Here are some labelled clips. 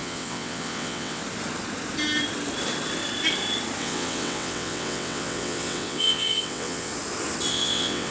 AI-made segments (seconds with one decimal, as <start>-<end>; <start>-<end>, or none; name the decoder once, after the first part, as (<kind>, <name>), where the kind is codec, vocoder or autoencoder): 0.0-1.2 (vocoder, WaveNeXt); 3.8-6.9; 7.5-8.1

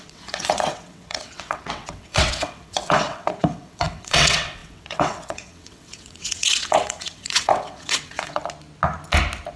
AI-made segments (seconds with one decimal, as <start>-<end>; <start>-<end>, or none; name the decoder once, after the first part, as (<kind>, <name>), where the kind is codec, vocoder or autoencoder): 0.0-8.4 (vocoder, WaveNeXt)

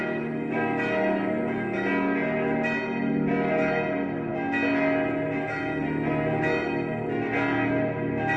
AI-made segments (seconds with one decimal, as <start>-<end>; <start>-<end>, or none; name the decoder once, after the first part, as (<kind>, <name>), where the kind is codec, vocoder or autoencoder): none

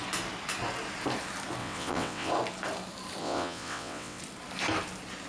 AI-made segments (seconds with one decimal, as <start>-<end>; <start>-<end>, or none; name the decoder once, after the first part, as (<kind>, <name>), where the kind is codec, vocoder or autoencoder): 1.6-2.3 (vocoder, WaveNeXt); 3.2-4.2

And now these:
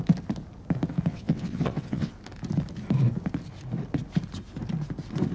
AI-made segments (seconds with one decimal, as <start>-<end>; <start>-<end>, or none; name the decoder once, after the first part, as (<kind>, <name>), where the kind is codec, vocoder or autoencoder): 1.1-2.1 (vocoder, WaveNeXt)

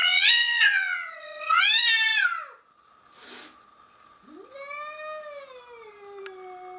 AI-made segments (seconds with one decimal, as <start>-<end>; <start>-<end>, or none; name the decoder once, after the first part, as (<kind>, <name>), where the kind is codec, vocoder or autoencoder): 0.0-1.6 (vocoder, WaveNeXt)

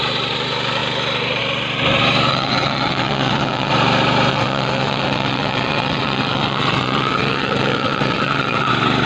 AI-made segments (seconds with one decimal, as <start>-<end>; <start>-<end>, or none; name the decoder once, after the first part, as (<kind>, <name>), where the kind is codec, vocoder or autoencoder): 2.3-3.7 (vocoder, WaveNeXt); 4.3-8.7